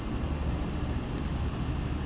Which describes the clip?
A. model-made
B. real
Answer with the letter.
B